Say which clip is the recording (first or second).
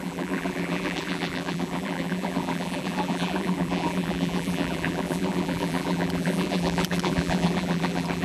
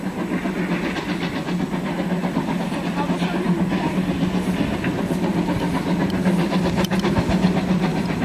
second